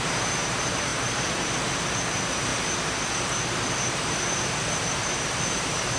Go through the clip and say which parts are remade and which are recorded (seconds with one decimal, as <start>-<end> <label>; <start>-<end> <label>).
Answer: 0.0-0.9 remade; 0.9-2.1 recorded; 2.1-2.5 remade; 2.5-3.9 recorded; 3.9-6.0 remade